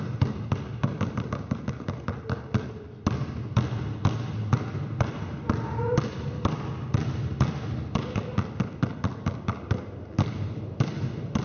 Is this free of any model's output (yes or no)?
yes